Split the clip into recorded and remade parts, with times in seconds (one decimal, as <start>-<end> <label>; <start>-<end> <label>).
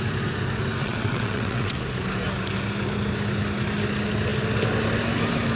0.0-0.8 recorded; 0.8-1.8 remade; 1.8-5.6 recorded